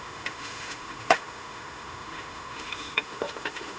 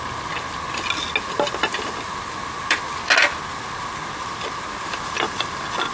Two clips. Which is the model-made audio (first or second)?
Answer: first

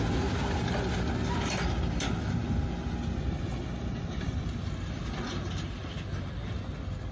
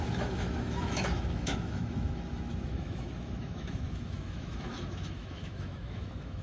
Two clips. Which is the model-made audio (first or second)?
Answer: second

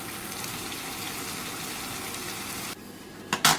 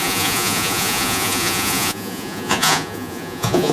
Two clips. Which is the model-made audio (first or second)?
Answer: second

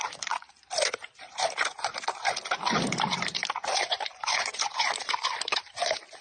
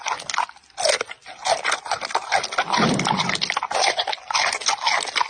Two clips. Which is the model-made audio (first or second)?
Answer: first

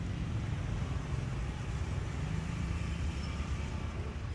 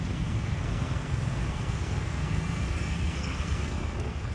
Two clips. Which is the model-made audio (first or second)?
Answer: second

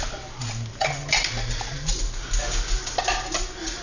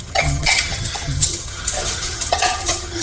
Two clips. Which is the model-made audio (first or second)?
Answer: second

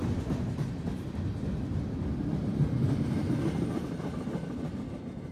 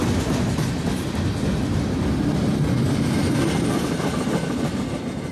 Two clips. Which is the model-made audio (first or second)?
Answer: first